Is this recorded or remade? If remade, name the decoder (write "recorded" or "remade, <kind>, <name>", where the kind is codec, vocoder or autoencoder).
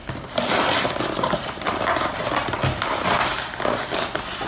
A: recorded